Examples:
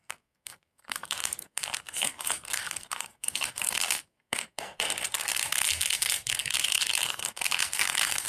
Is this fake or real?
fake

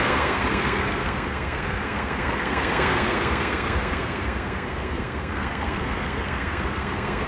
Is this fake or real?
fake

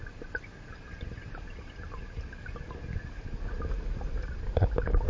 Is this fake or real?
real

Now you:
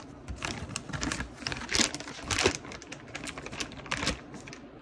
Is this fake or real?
real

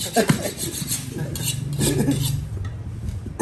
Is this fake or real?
real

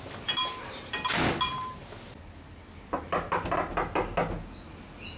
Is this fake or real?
real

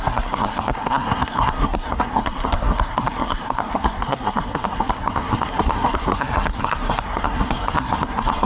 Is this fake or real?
fake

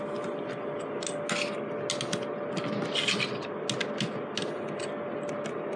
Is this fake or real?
real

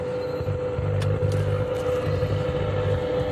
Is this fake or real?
real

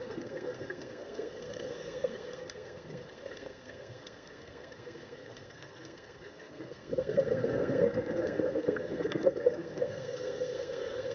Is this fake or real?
fake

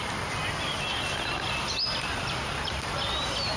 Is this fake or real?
real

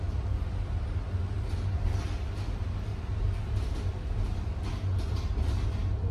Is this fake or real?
real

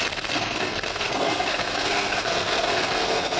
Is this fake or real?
fake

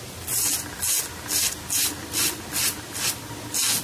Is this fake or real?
real